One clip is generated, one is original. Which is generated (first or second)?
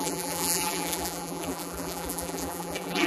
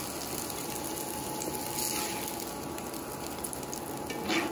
first